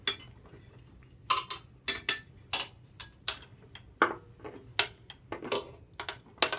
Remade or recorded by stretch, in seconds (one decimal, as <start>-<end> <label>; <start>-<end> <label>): 0.0-6.6 recorded